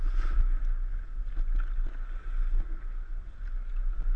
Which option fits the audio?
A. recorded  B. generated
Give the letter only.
A